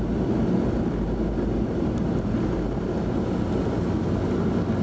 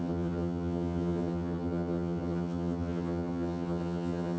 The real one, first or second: first